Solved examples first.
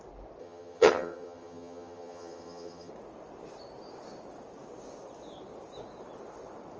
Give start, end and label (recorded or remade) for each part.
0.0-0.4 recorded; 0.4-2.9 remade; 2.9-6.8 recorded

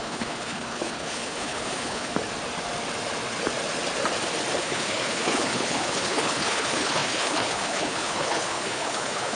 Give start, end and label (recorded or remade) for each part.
0.0-2.1 remade; 2.1-4.6 recorded; 4.6-9.4 remade

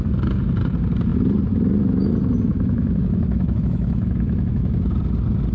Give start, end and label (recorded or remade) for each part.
0.0-2.5 recorded; 2.5-4.9 remade; 4.9-5.5 recorded